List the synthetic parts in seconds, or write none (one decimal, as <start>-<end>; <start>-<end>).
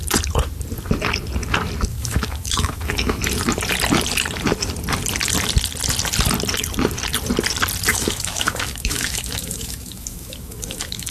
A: 1.9-3.2; 7.9-11.1